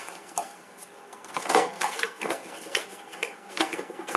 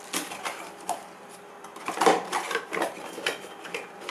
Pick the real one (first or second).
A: second